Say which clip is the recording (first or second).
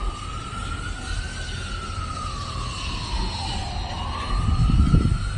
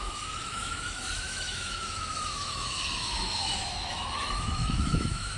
first